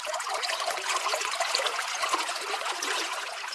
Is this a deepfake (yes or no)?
yes